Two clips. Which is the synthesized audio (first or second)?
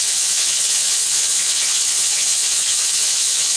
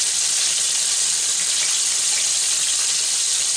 first